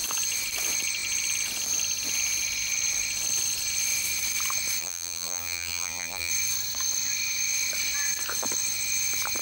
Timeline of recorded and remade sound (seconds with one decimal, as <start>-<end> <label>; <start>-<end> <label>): 0.0-4.8 recorded; 4.8-6.3 remade; 6.3-9.4 recorded